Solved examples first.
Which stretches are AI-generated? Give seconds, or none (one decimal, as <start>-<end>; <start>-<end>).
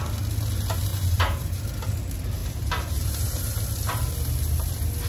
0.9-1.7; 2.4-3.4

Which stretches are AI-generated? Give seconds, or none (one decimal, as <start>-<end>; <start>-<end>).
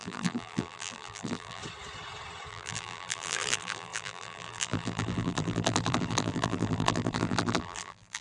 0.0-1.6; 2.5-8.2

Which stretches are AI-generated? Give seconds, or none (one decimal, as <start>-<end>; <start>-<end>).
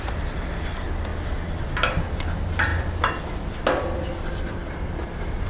none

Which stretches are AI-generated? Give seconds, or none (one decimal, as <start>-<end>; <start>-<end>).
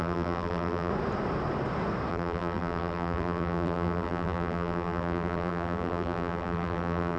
0.0-0.9; 2.1-7.2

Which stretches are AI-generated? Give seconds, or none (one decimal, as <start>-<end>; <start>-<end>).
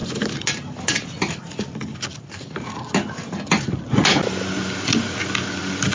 none